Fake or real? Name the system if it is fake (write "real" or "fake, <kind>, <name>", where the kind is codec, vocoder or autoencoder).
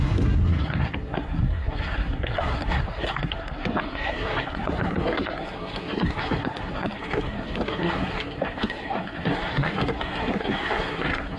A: fake, codec, SNAC